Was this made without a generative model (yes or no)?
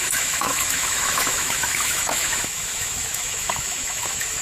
no